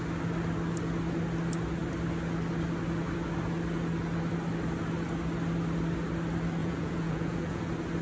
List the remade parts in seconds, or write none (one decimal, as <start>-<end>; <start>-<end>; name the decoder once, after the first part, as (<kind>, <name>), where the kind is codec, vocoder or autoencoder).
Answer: 6.6-7.6 (vocoder, Vocos)